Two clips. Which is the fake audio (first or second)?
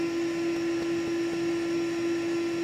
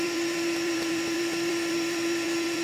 second